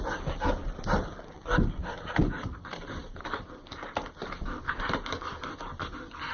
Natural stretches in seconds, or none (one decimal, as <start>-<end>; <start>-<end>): 0.0-6.3